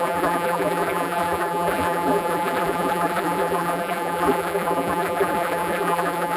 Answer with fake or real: fake